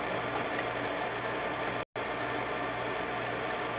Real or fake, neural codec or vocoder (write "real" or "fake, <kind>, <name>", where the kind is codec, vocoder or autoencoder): real